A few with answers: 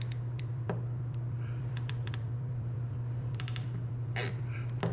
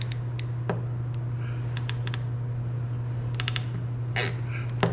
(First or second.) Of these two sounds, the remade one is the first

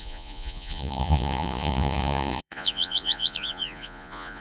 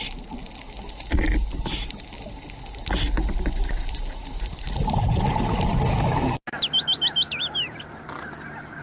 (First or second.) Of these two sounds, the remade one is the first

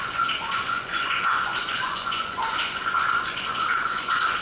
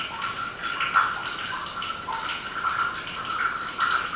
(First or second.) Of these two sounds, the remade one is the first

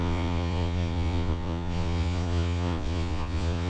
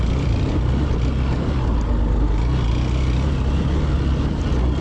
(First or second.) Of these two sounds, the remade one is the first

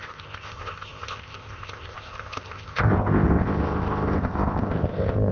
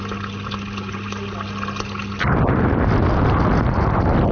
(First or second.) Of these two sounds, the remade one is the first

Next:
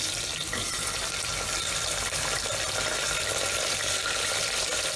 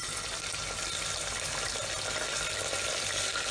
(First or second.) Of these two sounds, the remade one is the first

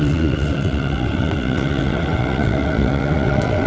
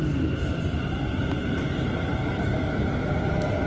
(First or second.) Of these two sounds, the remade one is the first